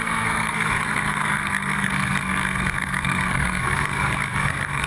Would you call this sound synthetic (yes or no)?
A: yes